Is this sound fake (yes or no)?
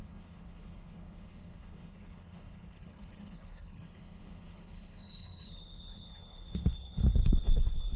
yes